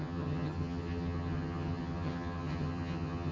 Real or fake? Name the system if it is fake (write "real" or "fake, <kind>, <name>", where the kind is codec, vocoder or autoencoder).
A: fake, vocoder, HiFi-GAN